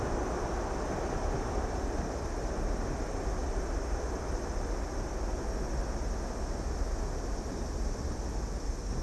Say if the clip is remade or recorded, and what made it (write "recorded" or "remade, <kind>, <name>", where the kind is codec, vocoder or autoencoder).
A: recorded